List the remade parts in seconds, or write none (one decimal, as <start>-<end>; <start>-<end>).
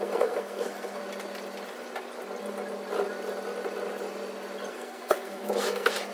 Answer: 0.0-1.0; 4.7-6.1